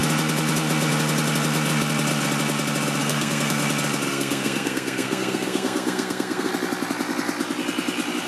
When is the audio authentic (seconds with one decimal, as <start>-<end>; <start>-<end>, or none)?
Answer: 0.0-3.0; 3.6-4.1; 6.5-8.3